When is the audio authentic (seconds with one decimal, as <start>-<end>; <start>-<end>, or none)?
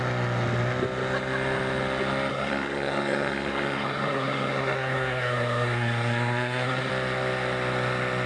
0.0-2.3; 6.9-8.3